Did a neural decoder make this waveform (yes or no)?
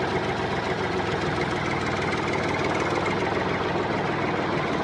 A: no